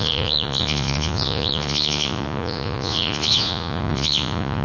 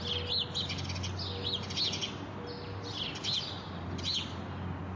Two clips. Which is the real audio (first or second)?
second